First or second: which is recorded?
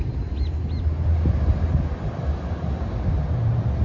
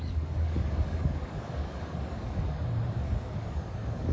first